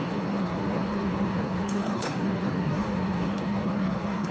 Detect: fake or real fake